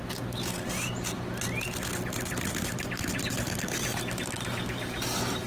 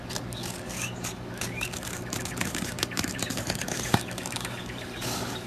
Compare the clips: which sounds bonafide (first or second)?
first